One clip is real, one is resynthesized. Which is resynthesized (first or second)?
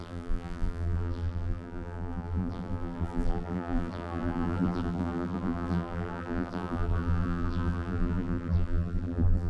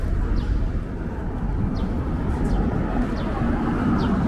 first